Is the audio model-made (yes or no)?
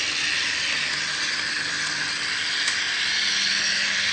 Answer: no